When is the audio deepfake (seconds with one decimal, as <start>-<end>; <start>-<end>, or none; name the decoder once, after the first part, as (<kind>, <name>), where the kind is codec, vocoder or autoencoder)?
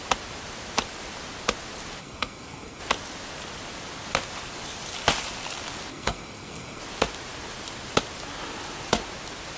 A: 2.0-2.8 (codec, SNAC); 5.9-6.8